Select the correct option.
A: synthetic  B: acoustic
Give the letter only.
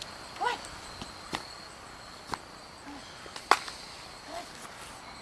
B